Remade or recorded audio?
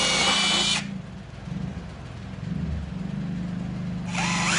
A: recorded